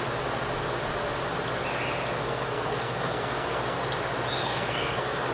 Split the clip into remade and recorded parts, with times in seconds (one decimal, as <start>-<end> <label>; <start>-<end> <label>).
0.0-2.2 recorded; 2.2-3.8 remade; 3.8-4.4 recorded; 4.4-5.3 remade